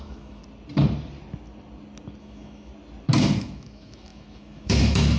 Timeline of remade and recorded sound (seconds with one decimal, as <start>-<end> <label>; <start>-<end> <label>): 0.0-0.4 remade; 0.4-2.2 recorded; 2.2-2.7 remade; 2.7-3.4 recorded; 3.4-5.2 remade